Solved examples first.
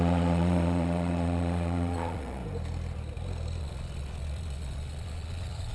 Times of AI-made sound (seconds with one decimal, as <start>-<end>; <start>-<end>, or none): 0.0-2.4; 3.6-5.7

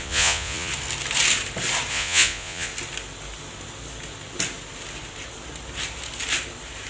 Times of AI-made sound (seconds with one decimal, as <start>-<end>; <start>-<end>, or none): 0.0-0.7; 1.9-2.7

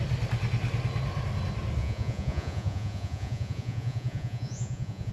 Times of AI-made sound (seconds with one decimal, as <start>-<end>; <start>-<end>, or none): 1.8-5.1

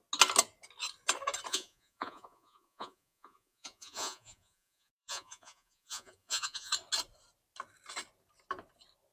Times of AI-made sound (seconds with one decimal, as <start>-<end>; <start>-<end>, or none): 1.5-6.7